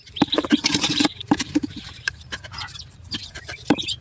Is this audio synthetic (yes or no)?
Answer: yes